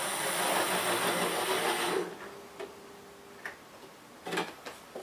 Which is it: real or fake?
real